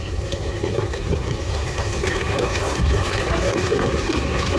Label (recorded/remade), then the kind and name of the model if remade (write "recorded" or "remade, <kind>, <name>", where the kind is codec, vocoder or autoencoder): remade, codec, SNAC